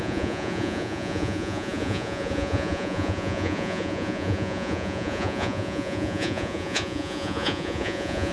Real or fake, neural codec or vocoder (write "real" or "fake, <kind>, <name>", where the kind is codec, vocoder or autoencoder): fake, vocoder, Vocos